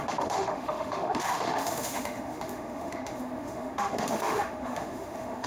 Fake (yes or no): yes